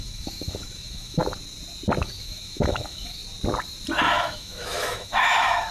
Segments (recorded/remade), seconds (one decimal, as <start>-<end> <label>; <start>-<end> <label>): 0.0-1.2 remade; 1.2-2.0 recorded; 2.0-3.2 remade; 3.2-4.1 recorded; 4.1-5.7 remade

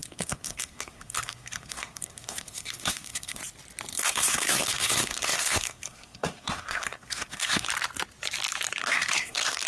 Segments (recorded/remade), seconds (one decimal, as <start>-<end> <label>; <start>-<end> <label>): 0.0-3.4 remade; 3.4-3.9 recorded; 3.9-7.7 remade; 7.7-8.8 recorded; 8.8-9.7 remade

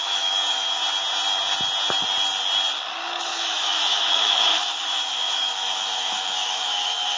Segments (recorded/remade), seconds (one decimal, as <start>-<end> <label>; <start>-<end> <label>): 0.0-0.8 remade; 0.8-3.0 recorded; 3.0-7.2 remade